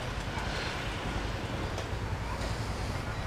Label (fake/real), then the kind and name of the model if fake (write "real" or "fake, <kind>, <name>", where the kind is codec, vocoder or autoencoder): real